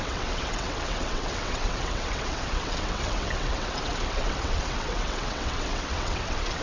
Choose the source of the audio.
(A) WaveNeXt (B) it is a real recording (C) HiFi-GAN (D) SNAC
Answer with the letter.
A